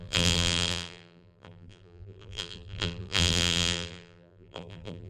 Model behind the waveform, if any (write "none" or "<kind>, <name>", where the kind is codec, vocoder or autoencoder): vocoder, BigVGAN v2